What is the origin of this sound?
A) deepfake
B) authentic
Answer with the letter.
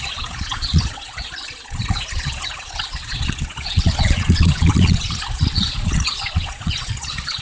A